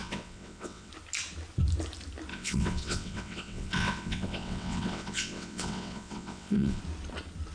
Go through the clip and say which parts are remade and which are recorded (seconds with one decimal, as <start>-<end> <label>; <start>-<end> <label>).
0.0-0.9 remade; 0.9-2.3 recorded; 2.3-6.8 remade; 6.8-7.5 recorded